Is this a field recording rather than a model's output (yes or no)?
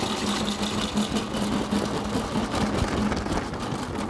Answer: yes